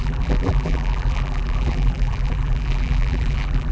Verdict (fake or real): fake